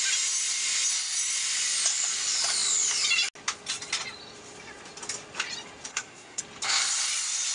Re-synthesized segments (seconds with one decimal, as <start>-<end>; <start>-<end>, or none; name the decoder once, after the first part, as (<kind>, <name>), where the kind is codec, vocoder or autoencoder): 5.9-6.4 (codec, SNAC)